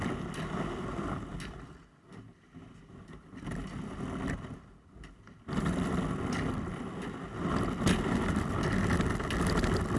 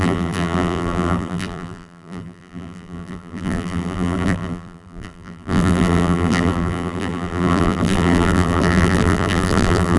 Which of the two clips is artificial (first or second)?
second